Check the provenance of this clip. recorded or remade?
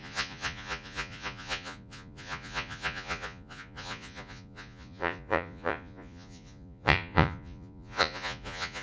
remade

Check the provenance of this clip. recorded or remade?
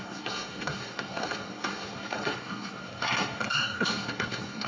remade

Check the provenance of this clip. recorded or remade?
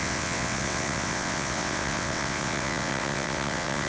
remade